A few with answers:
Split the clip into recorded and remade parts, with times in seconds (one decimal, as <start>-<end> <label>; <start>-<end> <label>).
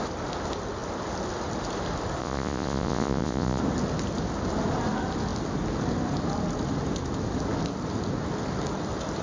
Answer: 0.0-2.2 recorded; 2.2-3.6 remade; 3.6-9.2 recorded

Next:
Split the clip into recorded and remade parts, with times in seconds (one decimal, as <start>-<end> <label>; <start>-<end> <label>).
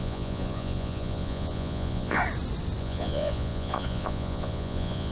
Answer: 0.0-2.2 remade; 2.2-2.8 recorded; 2.8-5.1 remade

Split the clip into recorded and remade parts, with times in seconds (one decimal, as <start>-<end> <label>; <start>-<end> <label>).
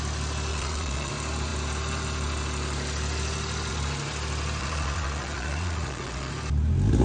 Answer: 0.0-0.5 recorded; 0.5-1.1 remade; 1.1-4.6 recorded; 4.6-6.3 remade; 6.3-7.0 recorded